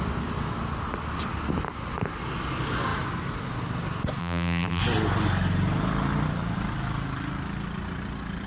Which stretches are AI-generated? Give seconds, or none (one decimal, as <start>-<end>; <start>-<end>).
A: 4.2-4.8